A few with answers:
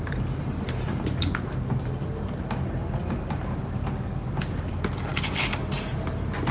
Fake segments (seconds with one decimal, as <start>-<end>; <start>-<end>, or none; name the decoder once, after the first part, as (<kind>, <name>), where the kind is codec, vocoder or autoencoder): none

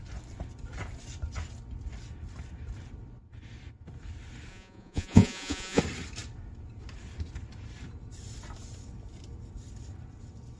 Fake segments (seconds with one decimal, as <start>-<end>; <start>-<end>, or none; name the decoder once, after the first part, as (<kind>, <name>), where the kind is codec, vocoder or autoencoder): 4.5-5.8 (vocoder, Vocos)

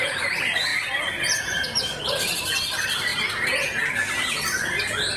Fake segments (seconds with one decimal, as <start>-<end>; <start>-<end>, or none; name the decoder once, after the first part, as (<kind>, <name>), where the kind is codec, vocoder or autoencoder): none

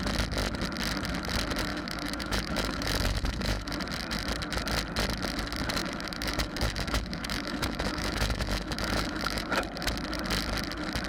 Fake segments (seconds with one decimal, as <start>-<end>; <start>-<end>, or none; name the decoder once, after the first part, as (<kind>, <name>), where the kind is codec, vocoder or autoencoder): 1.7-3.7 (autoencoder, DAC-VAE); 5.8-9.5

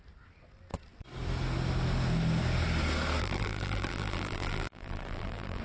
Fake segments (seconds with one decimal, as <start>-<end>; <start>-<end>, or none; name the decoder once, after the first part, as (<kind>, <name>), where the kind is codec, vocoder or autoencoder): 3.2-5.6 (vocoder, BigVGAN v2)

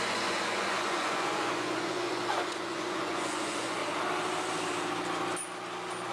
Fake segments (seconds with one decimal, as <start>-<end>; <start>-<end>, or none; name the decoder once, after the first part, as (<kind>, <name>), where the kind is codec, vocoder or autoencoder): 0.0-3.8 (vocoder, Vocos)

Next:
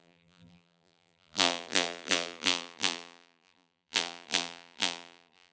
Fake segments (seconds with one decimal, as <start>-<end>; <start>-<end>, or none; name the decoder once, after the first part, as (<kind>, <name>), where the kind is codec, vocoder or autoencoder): 0.0-5.5 (vocoder, BigVGAN v2)